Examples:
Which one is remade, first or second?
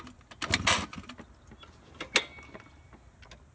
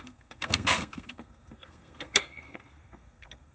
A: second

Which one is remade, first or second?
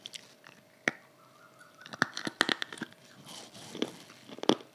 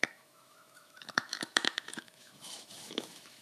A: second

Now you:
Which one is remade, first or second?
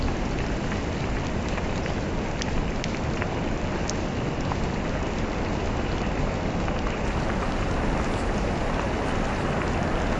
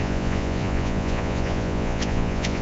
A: second